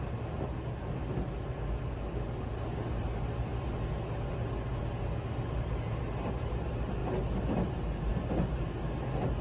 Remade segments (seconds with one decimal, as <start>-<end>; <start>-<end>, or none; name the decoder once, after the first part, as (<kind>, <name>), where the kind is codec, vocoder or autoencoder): none